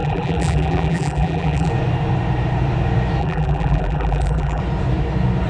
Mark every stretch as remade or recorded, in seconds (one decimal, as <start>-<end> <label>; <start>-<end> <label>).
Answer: 0.0-1.7 remade; 1.7-3.2 recorded; 3.2-4.6 remade; 4.6-5.5 recorded